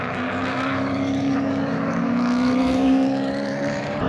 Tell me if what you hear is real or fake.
fake